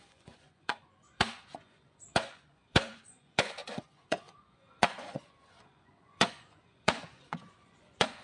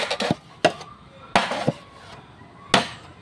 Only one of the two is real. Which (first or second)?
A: second